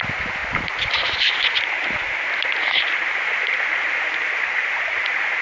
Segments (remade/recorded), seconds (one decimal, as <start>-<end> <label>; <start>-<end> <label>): 0.0-5.4 recorded